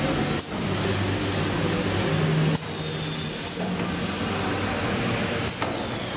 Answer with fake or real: real